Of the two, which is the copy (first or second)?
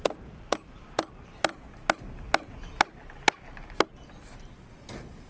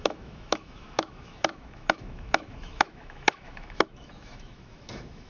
second